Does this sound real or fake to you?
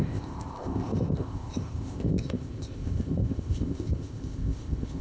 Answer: fake